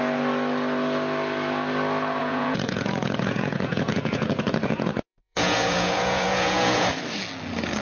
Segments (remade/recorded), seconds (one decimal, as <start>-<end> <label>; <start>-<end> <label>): 0.0-2.2 recorded; 2.2-6.9 remade; 6.9-7.8 recorded

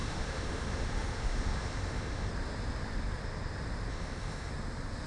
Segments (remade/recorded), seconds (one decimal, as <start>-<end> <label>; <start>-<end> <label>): 0.0-2.3 remade; 2.3-3.9 recorded; 3.9-4.5 remade; 4.5-5.1 recorded

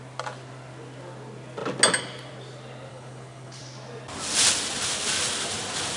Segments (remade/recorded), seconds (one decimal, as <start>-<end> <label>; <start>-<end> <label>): 0.0-2.9 recorded; 2.9-3.6 remade; 3.6-6.0 recorded

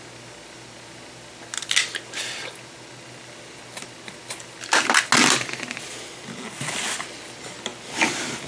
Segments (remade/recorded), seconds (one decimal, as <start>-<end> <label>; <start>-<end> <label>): 0.0-8.5 recorded

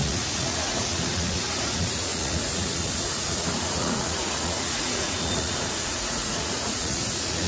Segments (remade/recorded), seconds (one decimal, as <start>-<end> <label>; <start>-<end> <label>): 0.0-7.5 remade

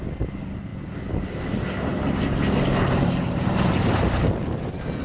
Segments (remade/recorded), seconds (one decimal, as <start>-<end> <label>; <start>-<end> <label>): 0.0-5.0 recorded

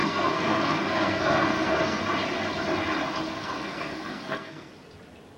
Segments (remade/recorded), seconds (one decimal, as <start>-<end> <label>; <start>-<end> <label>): 0.0-2.0 remade; 2.0-3.3 recorded; 3.3-4.7 remade; 4.7-5.4 recorded

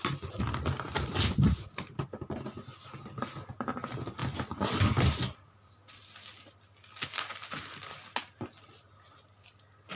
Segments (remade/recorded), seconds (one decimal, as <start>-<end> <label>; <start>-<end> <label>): 0.0-9.9 recorded